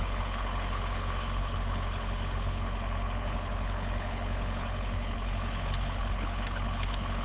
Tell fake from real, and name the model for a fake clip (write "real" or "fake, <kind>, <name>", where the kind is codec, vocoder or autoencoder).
fake, codec, HILCodec